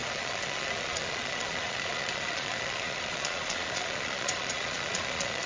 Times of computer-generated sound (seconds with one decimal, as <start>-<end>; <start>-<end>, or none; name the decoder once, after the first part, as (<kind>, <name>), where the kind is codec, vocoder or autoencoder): 0.0-5.5 (vocoder, Vocos)